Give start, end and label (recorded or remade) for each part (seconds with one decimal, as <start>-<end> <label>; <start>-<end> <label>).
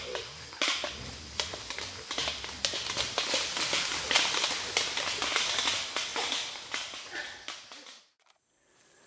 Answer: 0.0-9.1 recorded